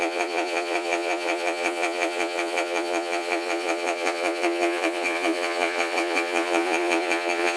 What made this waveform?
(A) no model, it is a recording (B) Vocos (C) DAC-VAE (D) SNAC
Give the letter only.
B